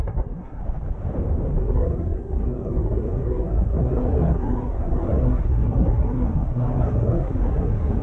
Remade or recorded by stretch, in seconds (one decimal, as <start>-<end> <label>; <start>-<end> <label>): 0.0-0.6 remade; 0.6-1.6 recorded; 1.6-8.0 remade